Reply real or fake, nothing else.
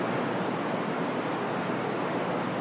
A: real